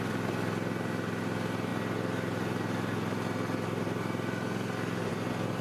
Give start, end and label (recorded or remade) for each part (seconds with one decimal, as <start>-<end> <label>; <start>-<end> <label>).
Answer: 0.0-5.6 recorded